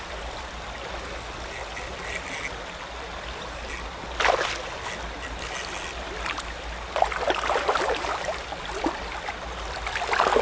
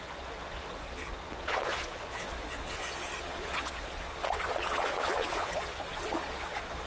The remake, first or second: second